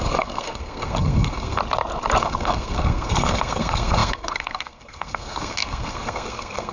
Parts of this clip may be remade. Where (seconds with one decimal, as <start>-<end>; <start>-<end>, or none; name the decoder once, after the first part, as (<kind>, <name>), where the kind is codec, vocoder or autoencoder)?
0.0-1.6 (codec, SNAC); 2.2-6.7